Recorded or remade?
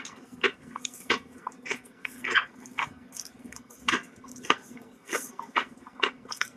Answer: remade